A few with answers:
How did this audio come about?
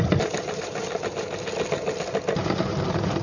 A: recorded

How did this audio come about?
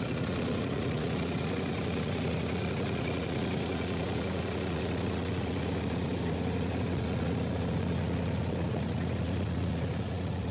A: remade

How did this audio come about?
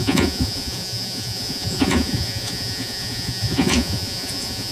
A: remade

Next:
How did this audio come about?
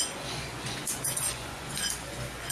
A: remade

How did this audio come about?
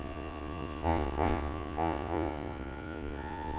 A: remade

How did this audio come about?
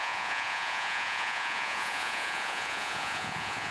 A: remade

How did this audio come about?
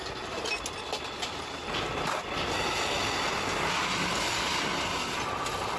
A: recorded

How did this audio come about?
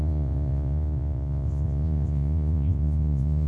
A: remade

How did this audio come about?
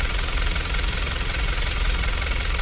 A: remade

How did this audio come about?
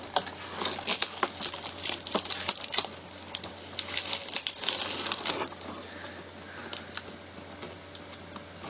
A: recorded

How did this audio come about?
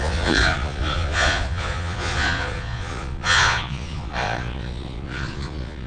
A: remade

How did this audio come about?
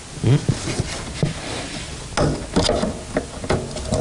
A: recorded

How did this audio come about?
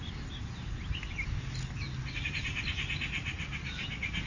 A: recorded